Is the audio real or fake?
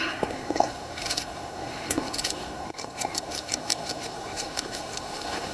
fake